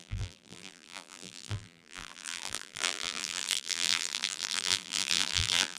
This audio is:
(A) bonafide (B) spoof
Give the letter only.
B